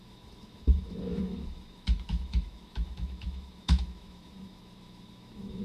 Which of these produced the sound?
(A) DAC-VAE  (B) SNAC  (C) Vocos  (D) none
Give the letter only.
A